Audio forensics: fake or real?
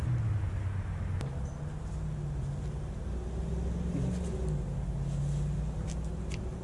real